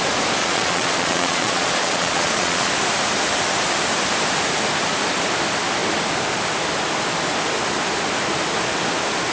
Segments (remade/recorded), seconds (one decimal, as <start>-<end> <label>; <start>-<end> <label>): 0.0-0.4 recorded; 0.4-2.7 remade; 2.7-9.3 recorded